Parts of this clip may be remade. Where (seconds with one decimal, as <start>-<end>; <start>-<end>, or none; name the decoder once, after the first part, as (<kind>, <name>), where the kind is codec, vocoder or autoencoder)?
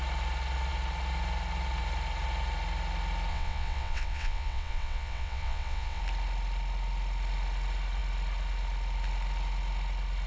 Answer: 3.3-6.0 (vocoder, WaveNeXt)